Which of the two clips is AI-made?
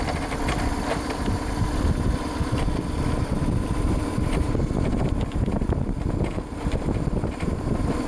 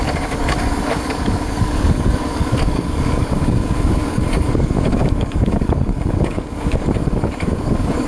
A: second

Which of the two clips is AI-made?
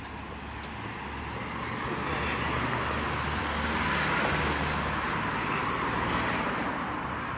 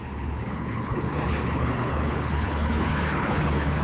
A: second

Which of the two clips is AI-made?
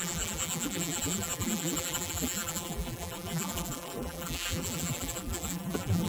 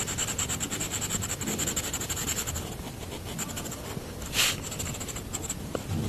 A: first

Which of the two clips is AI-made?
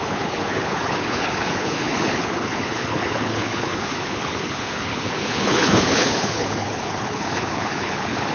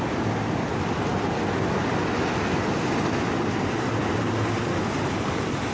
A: first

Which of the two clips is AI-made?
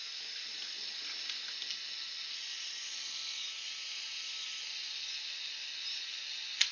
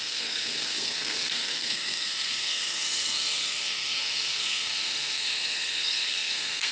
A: second